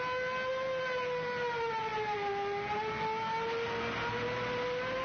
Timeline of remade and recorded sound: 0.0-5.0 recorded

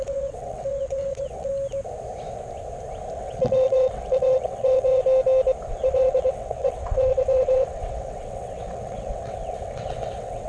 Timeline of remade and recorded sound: 0.0-1.5 remade; 1.5-3.1 recorded; 3.1-5.0 remade; 5.0-5.7 recorded; 5.7-10.5 remade

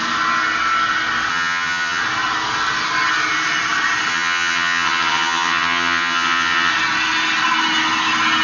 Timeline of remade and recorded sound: 0.0-1.3 recorded; 1.3-2.0 remade; 2.0-4.1 recorded; 4.1-6.7 remade; 6.7-8.4 recorded

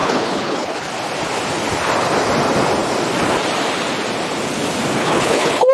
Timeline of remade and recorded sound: 0.0-0.9 remade; 0.9-5.0 recorded; 5.0-5.7 remade